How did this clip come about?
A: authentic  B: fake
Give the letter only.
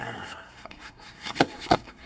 B